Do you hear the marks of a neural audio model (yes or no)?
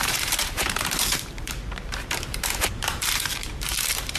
yes